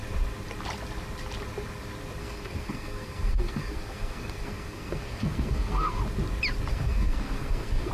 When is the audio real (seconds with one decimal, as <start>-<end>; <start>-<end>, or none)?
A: 0.0-2.2; 6.0-6.7